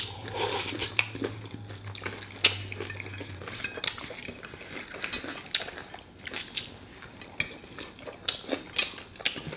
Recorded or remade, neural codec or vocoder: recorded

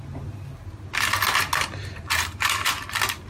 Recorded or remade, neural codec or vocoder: recorded